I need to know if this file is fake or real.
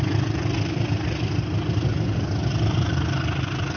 real